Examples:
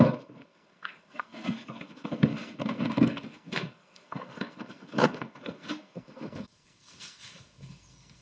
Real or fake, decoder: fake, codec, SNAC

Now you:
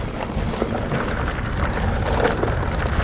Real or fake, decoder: real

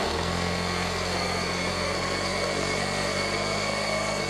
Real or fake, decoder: fake, codec, SNAC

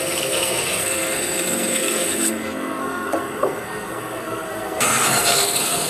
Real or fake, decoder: fake, codec, SNAC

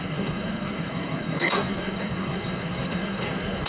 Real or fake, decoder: fake, codec, SNAC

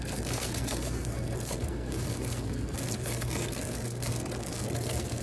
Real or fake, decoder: fake, codec, SNAC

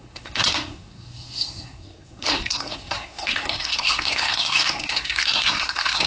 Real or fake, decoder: fake, codec, SNAC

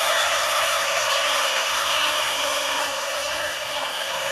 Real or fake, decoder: fake, codec, SNAC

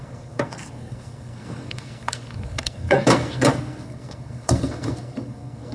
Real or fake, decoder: fake, codec, SNAC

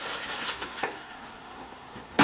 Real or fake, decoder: fake, codec, SNAC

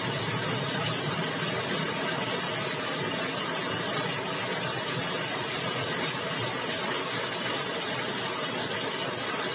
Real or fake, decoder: real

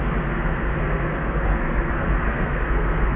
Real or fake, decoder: fake, codec, SNAC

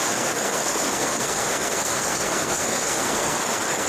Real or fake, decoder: fake, codec, SNAC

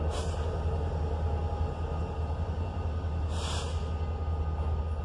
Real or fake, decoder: real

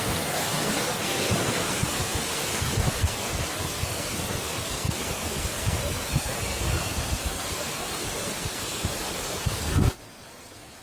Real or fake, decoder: fake, codec, SNAC